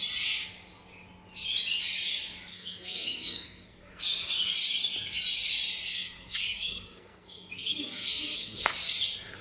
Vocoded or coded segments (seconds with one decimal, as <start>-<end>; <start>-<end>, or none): 2.5-4.0; 5.9-8.7